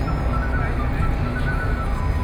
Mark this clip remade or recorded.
recorded